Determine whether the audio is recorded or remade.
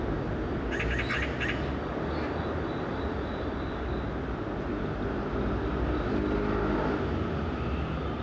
recorded